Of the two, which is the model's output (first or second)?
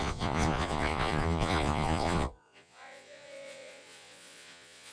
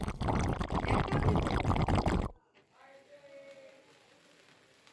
first